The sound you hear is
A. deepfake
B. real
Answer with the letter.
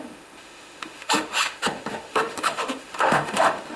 A